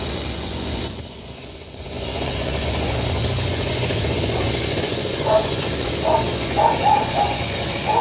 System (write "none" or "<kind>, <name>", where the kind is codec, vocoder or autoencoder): vocoder, Vocos